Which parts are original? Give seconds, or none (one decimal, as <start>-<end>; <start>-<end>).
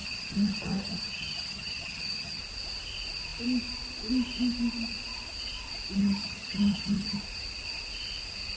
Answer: 2.4-6.0; 7.2-8.6